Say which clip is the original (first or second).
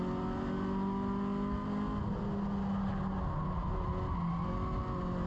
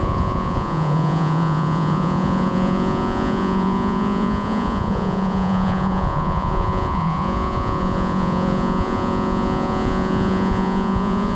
first